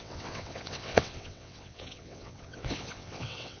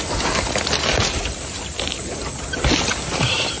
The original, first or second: second